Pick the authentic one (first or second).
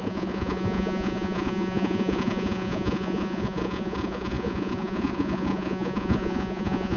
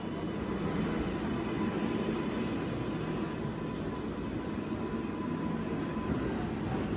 second